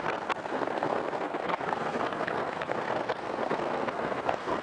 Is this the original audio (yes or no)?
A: no